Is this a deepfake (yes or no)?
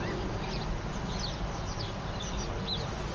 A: no